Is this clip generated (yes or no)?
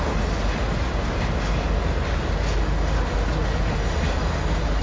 no